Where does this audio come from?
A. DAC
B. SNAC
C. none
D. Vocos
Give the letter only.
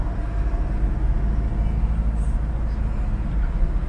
C